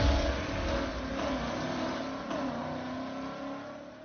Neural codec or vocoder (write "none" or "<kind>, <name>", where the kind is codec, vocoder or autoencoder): none